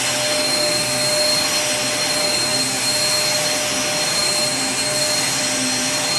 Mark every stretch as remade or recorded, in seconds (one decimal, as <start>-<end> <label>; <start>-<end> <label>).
0.0-6.2 recorded